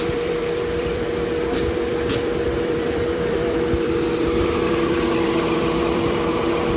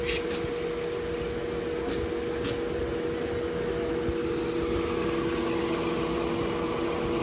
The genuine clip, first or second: second